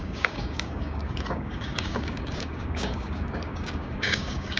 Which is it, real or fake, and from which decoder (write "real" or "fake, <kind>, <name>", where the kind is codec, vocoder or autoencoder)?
fake, codec, DAC